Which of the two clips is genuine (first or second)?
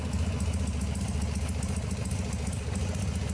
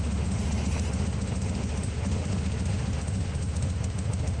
first